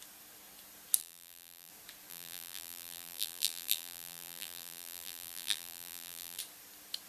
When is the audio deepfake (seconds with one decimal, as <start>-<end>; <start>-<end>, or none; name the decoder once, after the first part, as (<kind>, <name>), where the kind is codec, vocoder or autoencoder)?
1.0-1.7 (vocoder, BigVGAN v2); 2.1-6.4